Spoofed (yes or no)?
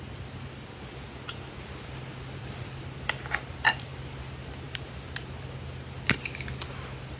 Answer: no